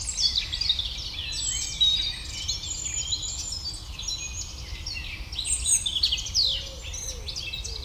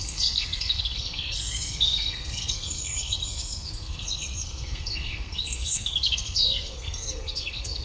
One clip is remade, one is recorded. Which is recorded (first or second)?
first